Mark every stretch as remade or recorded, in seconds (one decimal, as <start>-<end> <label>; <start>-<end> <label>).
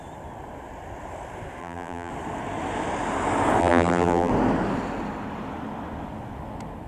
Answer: 0.0-1.6 recorded; 1.6-2.1 remade; 2.1-3.6 recorded; 3.6-4.3 remade; 4.3-6.9 recorded